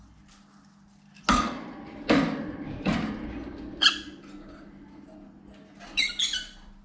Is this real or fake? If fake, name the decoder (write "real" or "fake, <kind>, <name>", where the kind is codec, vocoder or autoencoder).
real